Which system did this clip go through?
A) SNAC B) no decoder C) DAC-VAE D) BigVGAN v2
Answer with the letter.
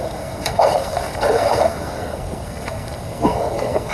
A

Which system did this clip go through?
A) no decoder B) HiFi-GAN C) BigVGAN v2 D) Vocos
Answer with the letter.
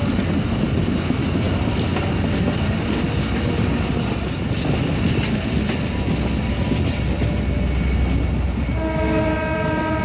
A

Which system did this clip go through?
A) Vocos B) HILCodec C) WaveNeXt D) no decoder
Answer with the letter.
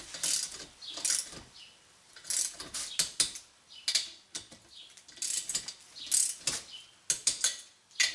D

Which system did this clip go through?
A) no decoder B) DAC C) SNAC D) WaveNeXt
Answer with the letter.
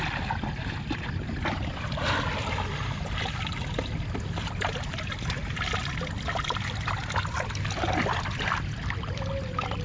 A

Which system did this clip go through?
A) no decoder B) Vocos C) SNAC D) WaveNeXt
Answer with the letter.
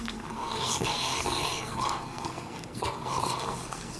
C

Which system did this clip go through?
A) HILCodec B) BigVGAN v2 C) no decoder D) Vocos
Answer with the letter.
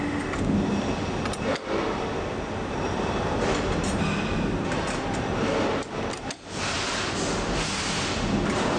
C